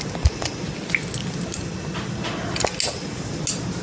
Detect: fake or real real